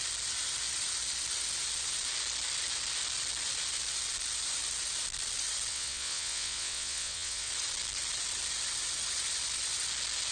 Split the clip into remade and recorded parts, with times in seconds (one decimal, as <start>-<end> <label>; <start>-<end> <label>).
0.0-5.7 recorded; 5.7-7.5 remade; 7.5-10.3 recorded